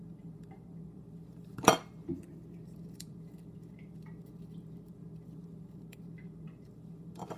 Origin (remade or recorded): remade